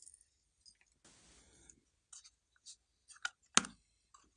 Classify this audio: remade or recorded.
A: recorded